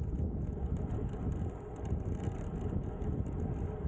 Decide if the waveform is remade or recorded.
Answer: recorded